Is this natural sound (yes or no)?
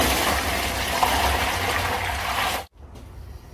yes